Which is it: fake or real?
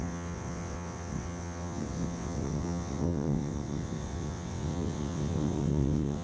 fake